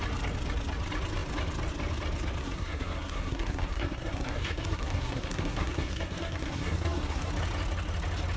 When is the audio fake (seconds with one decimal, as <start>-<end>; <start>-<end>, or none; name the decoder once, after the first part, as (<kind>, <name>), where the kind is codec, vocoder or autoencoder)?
2.4-7.3 (codec, SNAC)